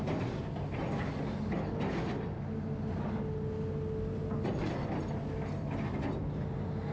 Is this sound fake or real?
real